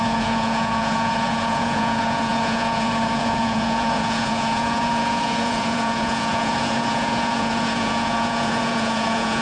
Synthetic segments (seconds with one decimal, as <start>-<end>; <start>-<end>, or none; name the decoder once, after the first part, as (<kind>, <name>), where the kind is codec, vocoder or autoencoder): 0.0-9.4 (vocoder, Vocos)